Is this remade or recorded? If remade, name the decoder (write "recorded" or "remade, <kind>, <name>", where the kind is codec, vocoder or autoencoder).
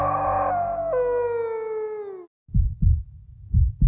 recorded